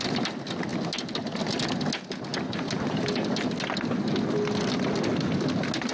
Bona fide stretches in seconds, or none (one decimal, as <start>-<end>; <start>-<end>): 0.0-5.9